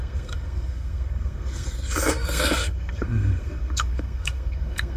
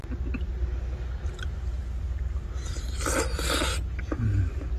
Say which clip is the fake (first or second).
first